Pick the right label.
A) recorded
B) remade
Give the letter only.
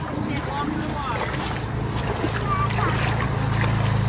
A